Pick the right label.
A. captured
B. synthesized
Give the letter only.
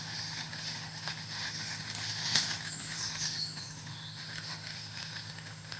B